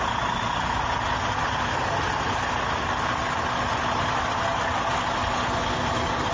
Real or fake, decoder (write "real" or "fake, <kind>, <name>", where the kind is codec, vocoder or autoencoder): real